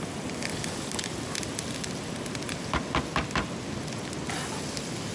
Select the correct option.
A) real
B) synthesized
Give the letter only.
A